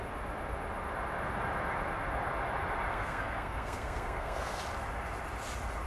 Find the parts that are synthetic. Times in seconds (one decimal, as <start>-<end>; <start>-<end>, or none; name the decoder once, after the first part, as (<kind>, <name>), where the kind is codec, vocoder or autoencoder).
2.9-4.6 (codec, SNAC)